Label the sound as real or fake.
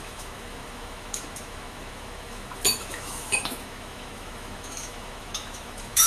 fake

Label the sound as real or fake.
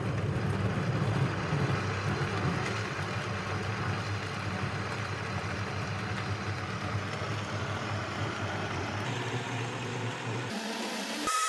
real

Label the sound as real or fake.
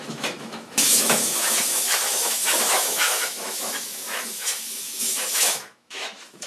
fake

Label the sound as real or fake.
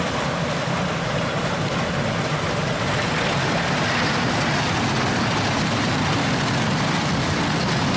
real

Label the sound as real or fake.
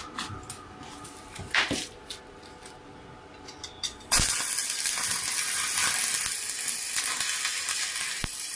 real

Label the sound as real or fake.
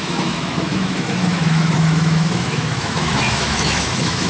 fake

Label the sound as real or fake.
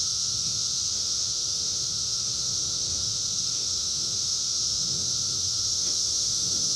fake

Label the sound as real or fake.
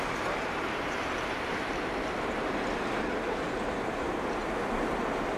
real